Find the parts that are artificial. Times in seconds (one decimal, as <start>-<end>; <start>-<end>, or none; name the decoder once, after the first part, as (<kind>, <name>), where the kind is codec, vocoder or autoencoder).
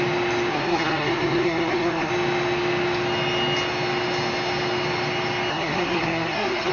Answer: 0.5-2.1 (codec, SNAC); 5.5-6.7